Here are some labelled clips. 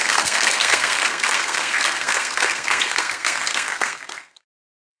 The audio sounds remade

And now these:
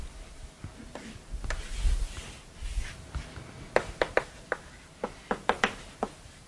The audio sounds recorded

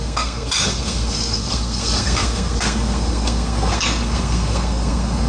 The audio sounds remade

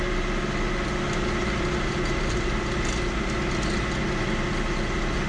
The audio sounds recorded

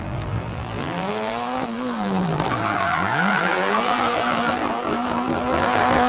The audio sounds remade